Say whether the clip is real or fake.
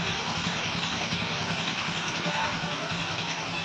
fake